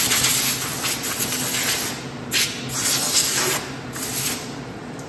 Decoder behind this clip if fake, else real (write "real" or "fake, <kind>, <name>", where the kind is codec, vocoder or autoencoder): real